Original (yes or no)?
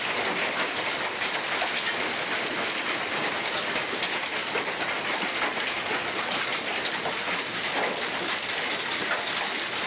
yes